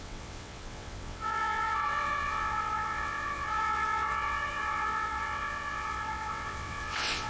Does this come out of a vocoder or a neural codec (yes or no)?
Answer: yes